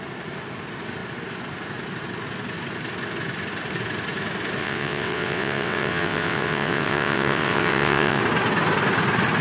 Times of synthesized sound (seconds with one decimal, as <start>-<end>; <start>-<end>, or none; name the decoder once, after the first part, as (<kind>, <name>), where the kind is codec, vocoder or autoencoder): 4.6-8.2 (vocoder, WaveNeXt)